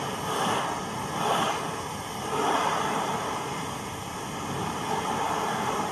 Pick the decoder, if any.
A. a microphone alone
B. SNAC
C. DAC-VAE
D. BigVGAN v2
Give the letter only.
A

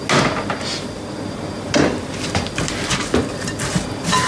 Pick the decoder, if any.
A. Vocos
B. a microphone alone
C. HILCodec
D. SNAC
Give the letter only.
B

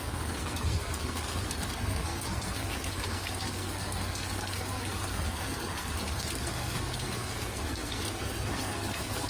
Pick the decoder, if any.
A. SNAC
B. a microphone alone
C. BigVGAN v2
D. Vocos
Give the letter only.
A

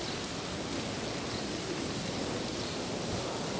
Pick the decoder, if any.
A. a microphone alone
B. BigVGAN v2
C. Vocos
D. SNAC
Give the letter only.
A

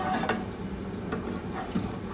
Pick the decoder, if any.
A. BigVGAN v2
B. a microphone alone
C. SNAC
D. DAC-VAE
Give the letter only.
B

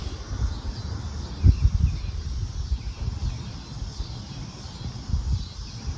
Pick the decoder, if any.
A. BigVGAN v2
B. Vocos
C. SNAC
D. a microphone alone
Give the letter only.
D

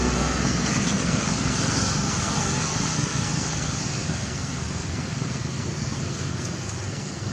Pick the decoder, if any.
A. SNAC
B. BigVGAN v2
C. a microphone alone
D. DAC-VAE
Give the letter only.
A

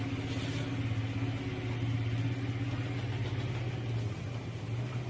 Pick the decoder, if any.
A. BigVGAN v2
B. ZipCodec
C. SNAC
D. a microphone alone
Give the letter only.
D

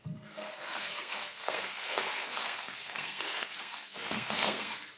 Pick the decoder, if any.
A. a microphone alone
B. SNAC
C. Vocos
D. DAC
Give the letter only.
B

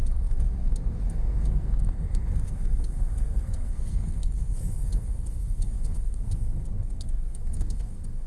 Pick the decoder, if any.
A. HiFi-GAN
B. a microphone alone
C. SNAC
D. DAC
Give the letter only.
C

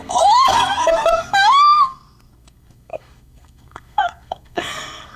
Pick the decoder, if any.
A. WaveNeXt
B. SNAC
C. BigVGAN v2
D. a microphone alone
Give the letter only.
B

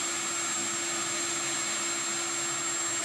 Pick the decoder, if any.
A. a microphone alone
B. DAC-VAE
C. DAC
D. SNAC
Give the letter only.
A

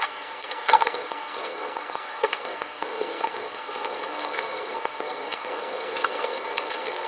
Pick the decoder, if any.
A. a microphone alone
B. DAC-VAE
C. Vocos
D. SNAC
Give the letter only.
D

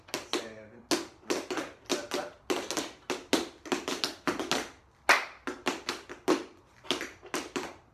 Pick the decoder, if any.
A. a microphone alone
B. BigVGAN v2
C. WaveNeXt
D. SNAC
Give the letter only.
A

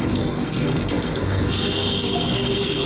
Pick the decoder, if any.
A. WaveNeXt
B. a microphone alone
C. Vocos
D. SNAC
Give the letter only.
D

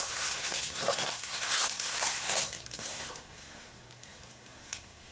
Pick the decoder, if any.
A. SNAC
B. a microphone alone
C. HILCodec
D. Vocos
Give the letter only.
A